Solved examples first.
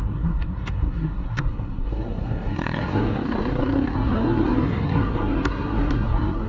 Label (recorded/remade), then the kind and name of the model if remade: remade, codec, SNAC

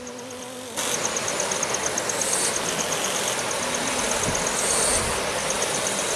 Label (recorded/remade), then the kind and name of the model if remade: recorded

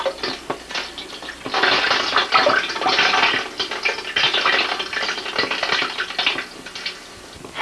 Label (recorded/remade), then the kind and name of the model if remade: recorded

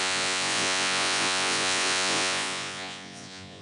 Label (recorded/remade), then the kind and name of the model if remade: remade, vocoder, Vocos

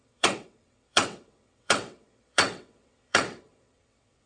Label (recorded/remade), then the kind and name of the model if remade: remade, vocoder, WaveNeXt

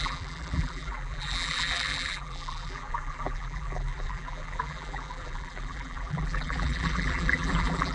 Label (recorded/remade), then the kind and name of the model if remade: remade, vocoder, BigVGAN v2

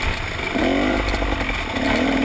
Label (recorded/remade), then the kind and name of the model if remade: recorded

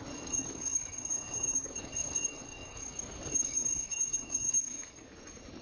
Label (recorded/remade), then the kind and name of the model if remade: remade, codec, DAC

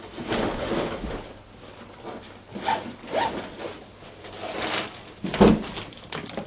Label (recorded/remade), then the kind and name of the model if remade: recorded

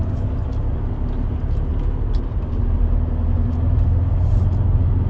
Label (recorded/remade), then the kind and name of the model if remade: recorded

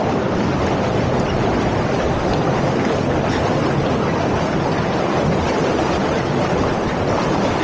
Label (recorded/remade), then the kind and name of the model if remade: recorded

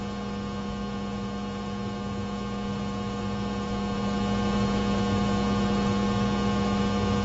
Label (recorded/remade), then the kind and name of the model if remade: remade, vocoder, BigVGAN v2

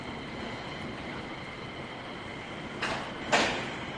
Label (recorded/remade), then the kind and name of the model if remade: recorded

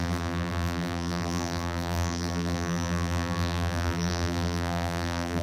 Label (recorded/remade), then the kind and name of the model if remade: remade, vocoder, BigVGAN v2